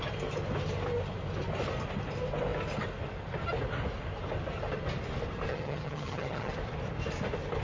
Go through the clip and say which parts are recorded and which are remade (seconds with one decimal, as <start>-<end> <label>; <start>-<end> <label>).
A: 0.0-5.5 recorded; 5.5-6.5 remade; 6.5-7.6 recorded